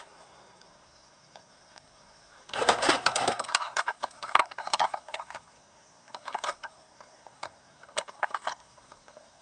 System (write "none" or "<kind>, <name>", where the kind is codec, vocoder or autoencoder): codec, SNAC